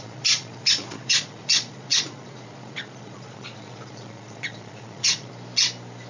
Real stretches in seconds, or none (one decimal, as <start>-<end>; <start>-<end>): 5.3-6.1